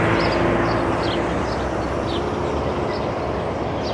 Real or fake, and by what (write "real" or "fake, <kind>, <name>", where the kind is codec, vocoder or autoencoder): real